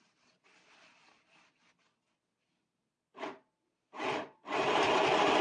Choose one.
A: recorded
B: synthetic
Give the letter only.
A